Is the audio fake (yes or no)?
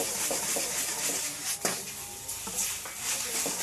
no